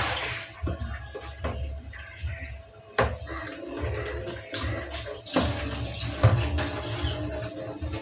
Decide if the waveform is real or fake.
real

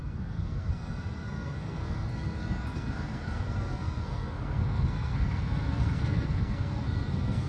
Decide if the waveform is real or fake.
fake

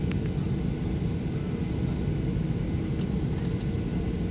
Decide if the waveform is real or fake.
real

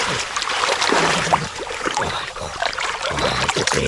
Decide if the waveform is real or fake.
fake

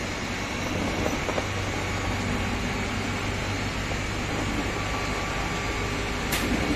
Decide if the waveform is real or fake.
real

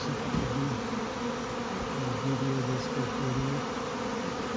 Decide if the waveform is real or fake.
real